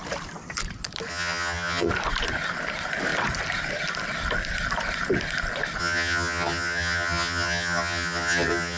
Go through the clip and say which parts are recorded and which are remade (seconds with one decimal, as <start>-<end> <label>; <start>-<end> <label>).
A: 0.0-1.1 recorded; 1.1-1.9 remade; 1.9-5.8 recorded; 5.8-8.8 remade